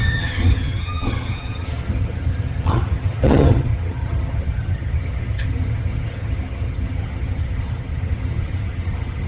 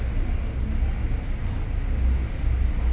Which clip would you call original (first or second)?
second